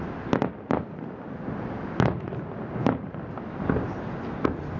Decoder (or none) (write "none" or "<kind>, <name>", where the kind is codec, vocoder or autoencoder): none